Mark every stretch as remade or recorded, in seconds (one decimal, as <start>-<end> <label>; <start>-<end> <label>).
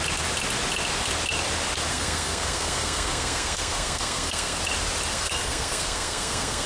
0.0-1.9 recorded; 1.9-4.6 remade; 4.6-5.1 recorded; 5.1-6.7 remade